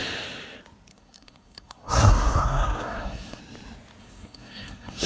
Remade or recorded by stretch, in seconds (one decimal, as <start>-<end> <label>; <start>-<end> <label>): 0.0-0.9 recorded; 0.9-3.4 remade; 3.4-4.0 recorded; 4.0-5.1 remade